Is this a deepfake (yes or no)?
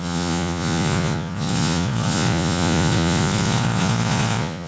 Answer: yes